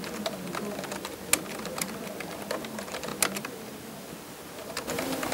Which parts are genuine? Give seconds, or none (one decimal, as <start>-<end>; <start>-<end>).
0.0-5.3